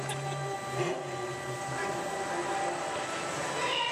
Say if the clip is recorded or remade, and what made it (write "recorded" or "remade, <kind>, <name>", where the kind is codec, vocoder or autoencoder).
recorded